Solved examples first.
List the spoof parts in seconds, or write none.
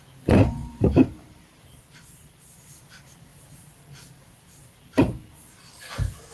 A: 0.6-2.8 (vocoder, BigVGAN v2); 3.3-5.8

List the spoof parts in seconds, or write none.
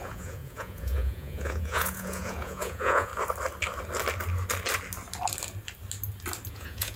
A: 0.0-3.1 (vocoder, Vocos); 6.5-7.0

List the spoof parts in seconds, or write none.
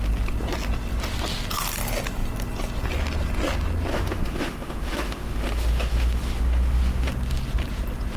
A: 3.9-7.1 (autoencoder, DAC-VAE)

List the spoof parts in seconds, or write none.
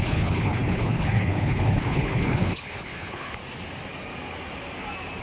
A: 0.0-3.4 (codec, HILCodec)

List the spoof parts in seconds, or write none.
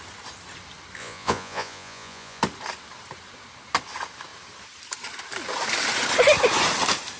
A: 1.0-2.4 (vocoder, Vocos)